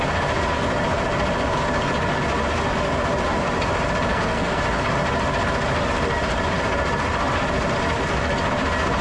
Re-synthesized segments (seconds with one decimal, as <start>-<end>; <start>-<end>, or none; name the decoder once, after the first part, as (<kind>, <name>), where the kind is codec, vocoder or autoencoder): 4.1-4.6 (codec, SNAC)